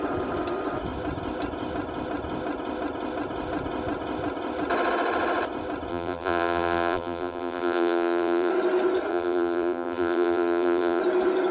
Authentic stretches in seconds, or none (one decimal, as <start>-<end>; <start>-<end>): 0.0-5.9; 8.5-9.1; 11.0-11.5